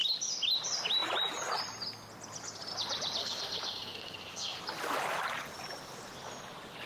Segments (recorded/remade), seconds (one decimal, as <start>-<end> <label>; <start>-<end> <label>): 0.0-3.2 recorded; 3.2-4.6 remade; 4.6-6.9 recorded